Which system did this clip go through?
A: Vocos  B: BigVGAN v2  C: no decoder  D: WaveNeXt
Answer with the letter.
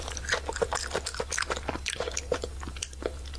C